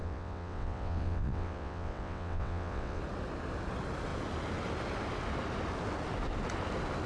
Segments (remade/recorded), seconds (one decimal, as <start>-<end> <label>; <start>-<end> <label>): 0.0-3.0 remade; 3.0-7.1 recorded